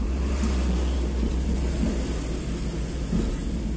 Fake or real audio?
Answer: real